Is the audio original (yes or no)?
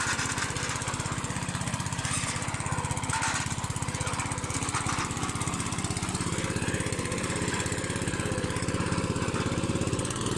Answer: yes